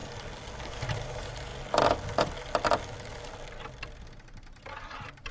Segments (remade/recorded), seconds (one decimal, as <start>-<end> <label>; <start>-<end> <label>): 0.0-0.7 recorded; 0.7-1.5 remade; 1.5-4.7 recorded; 4.7-5.3 remade